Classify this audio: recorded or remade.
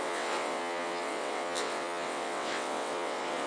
remade